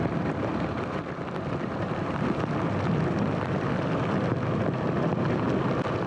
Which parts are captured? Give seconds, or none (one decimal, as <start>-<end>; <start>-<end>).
0.0-6.1